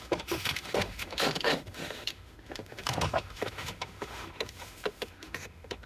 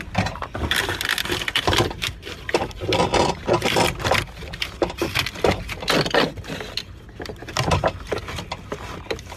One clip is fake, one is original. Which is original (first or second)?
second